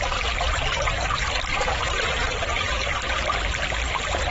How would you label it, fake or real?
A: fake